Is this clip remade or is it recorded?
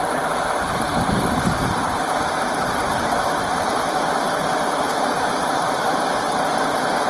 recorded